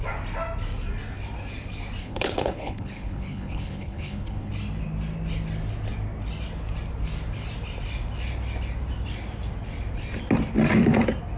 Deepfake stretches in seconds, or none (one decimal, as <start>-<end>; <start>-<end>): 2.0-4.5